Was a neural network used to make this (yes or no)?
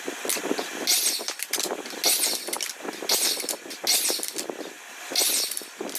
no